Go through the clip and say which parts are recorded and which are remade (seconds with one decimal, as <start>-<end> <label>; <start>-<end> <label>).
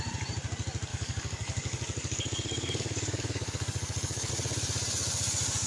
0.0-0.9 recorded; 0.9-4.3 remade; 4.3-5.7 recorded